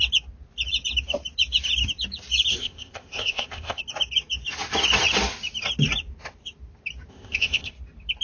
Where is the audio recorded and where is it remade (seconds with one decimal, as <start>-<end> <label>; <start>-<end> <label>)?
0.0-2.5 recorded; 2.5-3.8 remade; 3.8-7.1 recorded; 7.1-7.7 remade; 7.7-8.2 recorded